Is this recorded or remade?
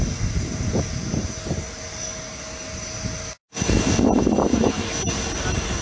recorded